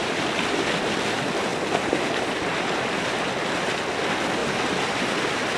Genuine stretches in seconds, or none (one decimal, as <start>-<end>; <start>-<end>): 0.0-5.6